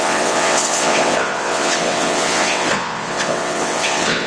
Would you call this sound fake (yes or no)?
yes